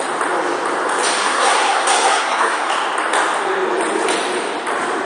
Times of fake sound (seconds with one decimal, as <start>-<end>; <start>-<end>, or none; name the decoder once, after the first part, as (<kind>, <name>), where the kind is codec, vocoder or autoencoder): 1.2-2.7 (codec, SNAC)